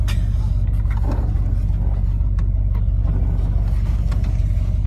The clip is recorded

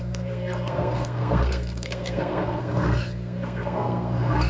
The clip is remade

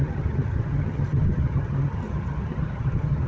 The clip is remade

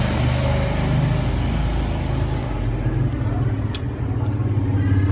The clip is recorded